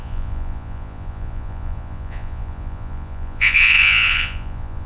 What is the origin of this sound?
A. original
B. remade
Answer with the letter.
B